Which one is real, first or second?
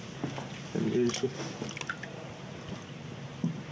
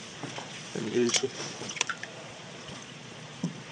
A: first